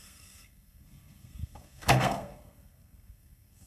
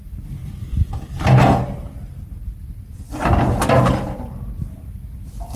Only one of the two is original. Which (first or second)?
second